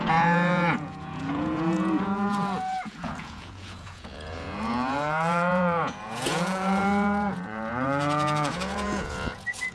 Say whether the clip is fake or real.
fake